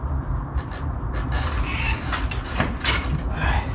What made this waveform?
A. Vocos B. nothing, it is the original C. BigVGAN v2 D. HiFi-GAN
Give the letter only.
B